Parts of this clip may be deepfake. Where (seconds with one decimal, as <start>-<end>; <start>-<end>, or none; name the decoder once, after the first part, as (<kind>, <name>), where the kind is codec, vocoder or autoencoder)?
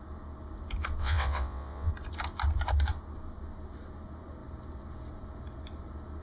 1.0-1.9 (vocoder, WaveNeXt)